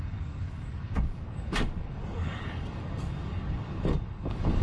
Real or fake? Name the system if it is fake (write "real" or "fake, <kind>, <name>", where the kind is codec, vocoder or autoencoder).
fake, codec, DAC